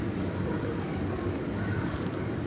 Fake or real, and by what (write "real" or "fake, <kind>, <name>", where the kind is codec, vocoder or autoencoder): fake, codec, DAC